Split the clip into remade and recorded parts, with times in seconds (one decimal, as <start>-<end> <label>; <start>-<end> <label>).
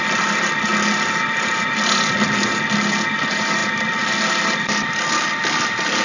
0.0-6.0 recorded